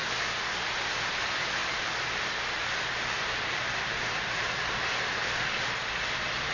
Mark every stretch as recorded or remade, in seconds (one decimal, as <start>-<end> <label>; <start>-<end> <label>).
0.0-1.6 recorded; 1.6-5.1 remade; 5.1-6.5 recorded